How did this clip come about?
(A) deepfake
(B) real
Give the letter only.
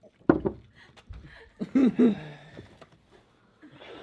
A